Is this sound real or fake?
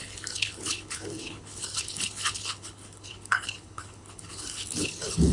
fake